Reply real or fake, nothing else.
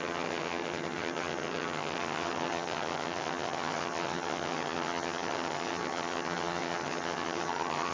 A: fake